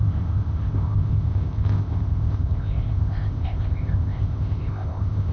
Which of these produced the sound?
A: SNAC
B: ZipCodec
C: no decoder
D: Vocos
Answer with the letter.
B